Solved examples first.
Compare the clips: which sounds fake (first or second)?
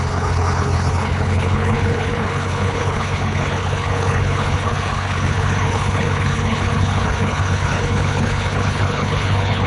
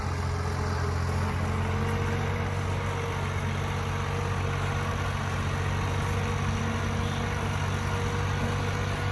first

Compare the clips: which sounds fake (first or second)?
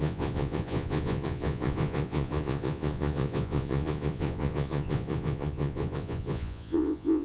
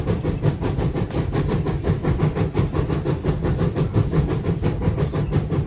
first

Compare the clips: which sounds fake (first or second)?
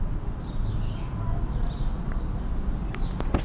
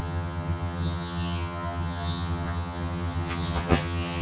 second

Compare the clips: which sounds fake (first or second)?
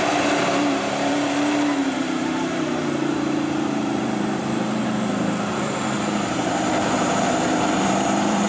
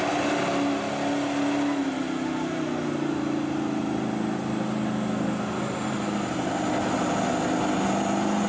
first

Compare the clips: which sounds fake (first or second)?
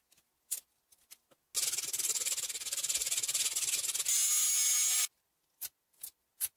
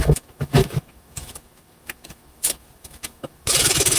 second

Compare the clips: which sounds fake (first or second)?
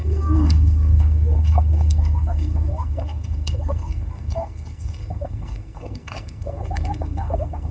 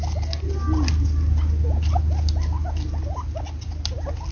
first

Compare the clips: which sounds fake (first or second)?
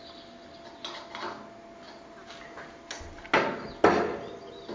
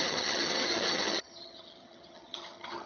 second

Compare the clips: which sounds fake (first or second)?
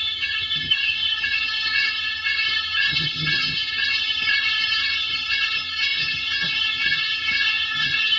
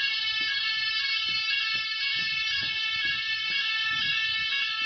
first